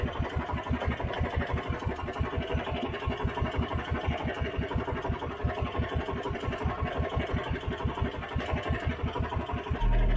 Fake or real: real